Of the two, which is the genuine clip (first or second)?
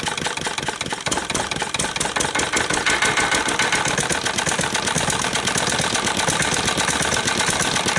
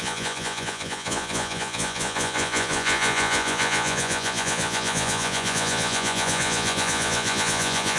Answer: first